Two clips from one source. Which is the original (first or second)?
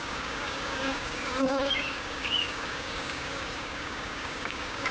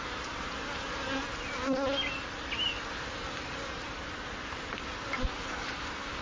second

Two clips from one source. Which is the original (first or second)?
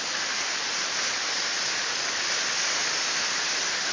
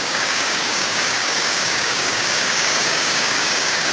first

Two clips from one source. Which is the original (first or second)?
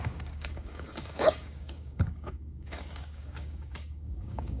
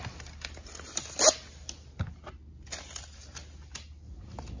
second